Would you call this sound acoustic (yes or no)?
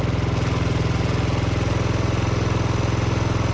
yes